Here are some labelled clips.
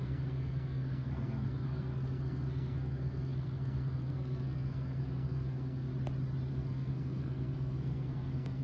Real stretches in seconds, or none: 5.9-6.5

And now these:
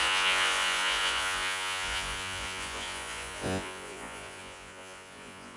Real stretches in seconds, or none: none